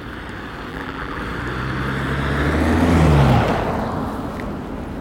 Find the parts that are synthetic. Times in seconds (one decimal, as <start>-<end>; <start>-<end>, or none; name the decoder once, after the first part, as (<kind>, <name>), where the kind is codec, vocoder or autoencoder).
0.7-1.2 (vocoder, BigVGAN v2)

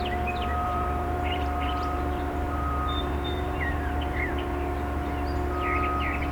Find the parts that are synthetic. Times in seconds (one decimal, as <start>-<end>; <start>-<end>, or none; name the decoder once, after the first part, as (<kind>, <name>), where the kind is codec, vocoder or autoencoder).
0.5-4.3 (vocoder, BigVGAN v2)

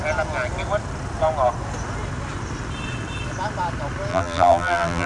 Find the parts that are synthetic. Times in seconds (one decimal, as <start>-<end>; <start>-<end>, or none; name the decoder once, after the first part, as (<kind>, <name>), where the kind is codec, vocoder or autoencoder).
4.1-5.1 (vocoder, BigVGAN v2)

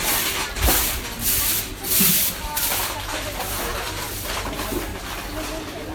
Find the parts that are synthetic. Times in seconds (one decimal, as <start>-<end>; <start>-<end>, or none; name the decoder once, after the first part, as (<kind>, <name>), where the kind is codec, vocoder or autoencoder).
0.4-3.4 (vocoder, BigVGAN v2)